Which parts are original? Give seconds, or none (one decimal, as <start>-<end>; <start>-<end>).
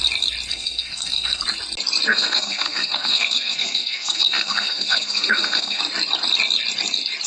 0.0-0.5; 1.4-2.1; 5.8-7.3